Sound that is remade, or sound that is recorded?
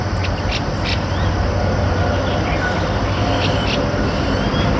recorded